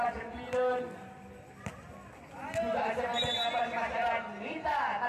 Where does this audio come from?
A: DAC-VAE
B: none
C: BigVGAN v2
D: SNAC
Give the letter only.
B